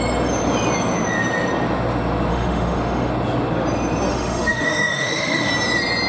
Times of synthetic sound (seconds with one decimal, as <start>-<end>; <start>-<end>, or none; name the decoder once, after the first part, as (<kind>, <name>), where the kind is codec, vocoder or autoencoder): 2.3-3.1 (autoencoder, DAC-VAE); 4.1-5.5